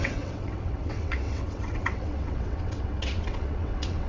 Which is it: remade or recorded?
remade